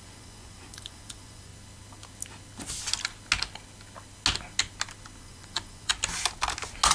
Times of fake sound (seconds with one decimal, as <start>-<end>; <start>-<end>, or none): 0.0-1.5; 5.2-5.9